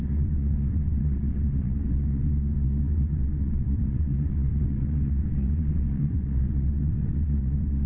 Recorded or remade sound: remade